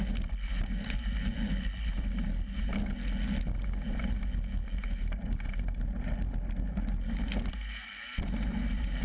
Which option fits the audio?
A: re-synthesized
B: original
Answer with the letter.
B